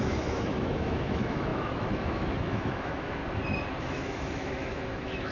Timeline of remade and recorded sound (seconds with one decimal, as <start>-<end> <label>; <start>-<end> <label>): 0.0-3.2 remade; 3.2-3.8 recorded; 3.8-5.3 remade